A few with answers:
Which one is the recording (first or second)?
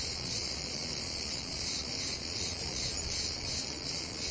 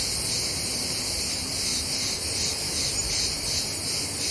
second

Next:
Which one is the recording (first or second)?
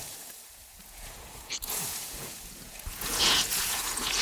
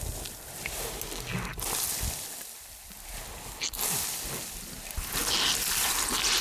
second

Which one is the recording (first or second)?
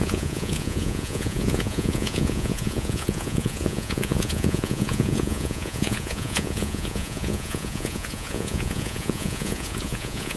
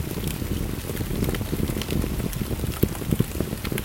second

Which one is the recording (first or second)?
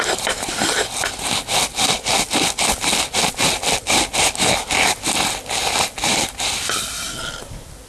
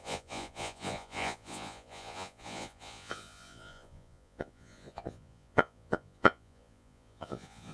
first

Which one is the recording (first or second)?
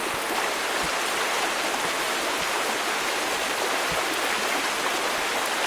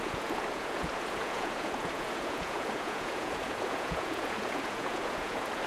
first